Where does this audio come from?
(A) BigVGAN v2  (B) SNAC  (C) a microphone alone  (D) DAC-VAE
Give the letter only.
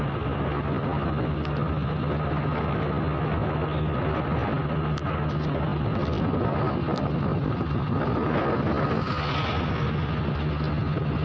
C